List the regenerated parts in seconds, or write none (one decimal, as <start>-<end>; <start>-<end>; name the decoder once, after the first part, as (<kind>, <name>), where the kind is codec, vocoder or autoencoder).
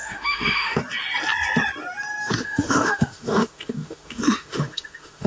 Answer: 0.0-0.8 (autoencoder, DAC-VAE); 2.2-5.3